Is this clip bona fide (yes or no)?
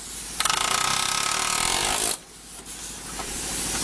yes